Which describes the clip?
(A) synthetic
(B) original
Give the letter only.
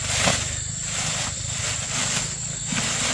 B